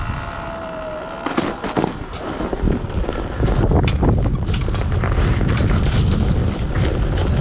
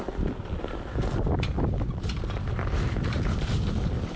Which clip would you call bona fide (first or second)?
first